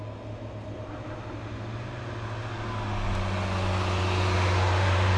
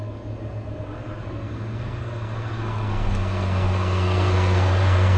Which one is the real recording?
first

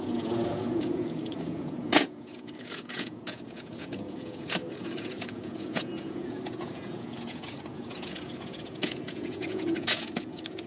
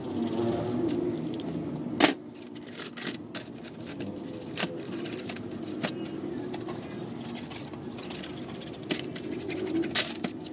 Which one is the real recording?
second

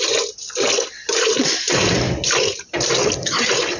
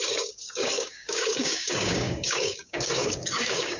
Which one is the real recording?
first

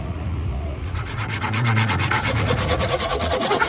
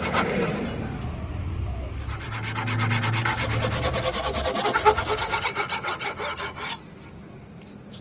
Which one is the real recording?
second